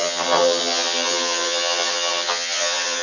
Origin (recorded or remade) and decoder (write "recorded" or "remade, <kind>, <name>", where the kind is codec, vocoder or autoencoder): remade, vocoder, HiFi-GAN